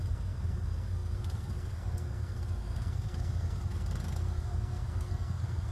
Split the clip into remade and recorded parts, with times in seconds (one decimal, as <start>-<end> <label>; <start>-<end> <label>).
0.0-5.7 remade